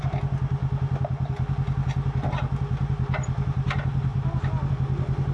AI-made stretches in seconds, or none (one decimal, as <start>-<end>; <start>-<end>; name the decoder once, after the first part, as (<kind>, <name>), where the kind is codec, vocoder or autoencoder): none